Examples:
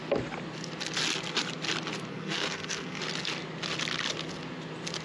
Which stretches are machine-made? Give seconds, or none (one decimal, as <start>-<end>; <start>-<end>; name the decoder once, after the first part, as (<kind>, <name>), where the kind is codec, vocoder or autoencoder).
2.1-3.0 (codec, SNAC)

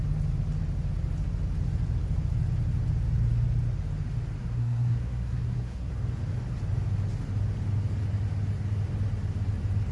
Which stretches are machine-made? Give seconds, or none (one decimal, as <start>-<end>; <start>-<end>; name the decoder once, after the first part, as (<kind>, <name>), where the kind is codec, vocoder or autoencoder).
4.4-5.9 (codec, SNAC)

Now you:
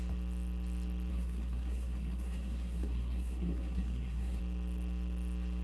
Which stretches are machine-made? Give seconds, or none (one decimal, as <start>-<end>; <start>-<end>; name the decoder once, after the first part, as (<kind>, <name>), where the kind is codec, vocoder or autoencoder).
1.1-4.4 (codec, SNAC)

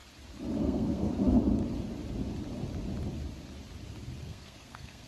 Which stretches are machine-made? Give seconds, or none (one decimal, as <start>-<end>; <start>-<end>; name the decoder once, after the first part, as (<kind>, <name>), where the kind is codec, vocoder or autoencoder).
0.6-1.1 (codec, SNAC); 4.2-5.1